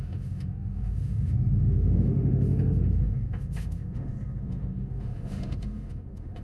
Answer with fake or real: fake